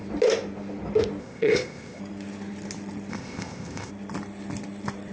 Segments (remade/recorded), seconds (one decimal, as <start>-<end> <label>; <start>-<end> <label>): 0.0-1.2 recorded; 1.2-2.0 remade; 2.0-3.1 recorded; 3.1-3.9 remade; 3.9-5.1 recorded